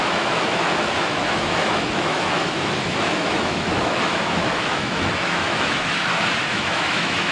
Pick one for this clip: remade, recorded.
remade